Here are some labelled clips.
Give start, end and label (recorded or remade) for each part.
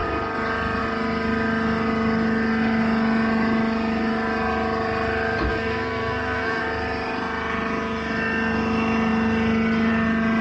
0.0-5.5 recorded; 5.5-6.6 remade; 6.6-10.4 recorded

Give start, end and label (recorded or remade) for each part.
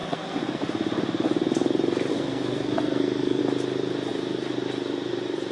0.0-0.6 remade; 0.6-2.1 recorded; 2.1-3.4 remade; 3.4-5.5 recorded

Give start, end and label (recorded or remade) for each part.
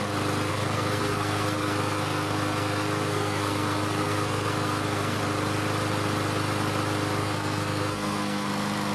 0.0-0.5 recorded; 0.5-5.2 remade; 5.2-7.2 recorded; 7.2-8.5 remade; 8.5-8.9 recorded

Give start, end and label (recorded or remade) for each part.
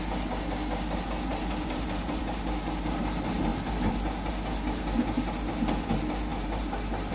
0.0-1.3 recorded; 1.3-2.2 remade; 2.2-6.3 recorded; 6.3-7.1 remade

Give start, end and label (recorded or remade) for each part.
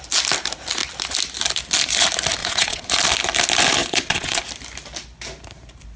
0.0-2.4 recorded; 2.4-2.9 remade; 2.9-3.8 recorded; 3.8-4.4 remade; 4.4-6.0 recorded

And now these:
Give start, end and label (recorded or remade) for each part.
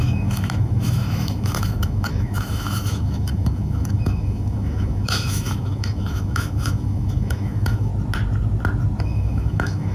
0.0-7.9 remade; 7.9-9.0 recorded; 9.0-9.9 remade